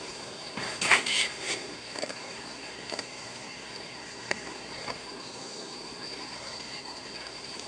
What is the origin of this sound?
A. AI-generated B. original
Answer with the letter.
A